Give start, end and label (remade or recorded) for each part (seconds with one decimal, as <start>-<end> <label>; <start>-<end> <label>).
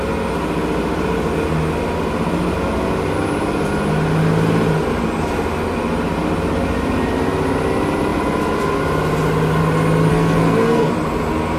0.0-10.1 recorded; 10.1-10.9 remade; 10.9-11.6 recorded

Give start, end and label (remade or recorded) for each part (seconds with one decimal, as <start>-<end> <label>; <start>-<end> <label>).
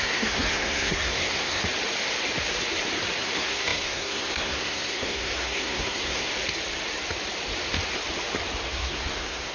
0.0-1.6 remade; 1.6-3.2 recorded; 3.2-6.3 remade; 6.3-8.6 recorded; 8.6-9.5 remade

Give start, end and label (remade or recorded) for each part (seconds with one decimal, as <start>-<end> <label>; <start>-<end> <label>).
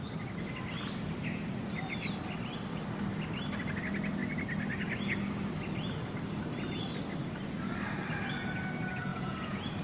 0.0-9.1 recorded; 9.1-9.8 remade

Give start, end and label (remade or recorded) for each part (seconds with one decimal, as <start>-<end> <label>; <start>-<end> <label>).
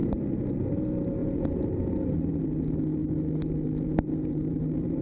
0.0-0.5 remade; 0.5-1.2 recorded; 1.2-2.2 remade; 2.2-3.0 recorded; 3.0-5.0 remade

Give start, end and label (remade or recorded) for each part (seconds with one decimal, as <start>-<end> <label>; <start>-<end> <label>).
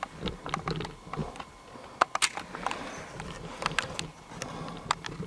0.0-5.3 recorded